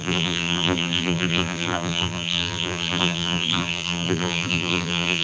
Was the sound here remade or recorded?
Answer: remade